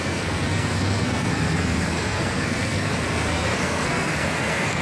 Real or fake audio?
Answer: fake